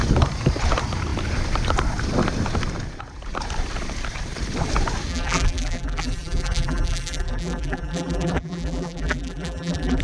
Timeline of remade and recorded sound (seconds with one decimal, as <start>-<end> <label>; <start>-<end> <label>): 0.0-5.1 recorded; 5.1-10.0 remade